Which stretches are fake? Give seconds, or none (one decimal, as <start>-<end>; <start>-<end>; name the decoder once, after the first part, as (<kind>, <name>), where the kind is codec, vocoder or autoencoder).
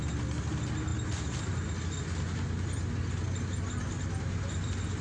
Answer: none